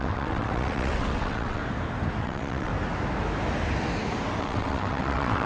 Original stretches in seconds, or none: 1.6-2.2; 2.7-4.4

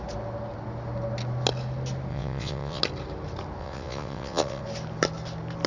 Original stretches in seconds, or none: 0.0-2.1; 2.8-3.6; 4.6-5.7

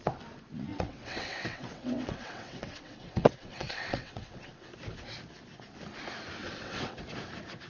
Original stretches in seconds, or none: 0.0-0.7; 4.7-6.4; 7.0-7.7